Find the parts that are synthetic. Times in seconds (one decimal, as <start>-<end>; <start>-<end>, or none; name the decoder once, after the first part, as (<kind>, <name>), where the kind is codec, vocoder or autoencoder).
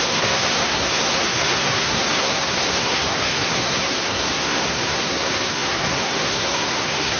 0.0-7.2 (codec, SNAC)